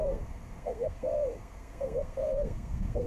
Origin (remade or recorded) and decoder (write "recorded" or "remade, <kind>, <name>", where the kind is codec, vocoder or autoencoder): remade, codec, SNAC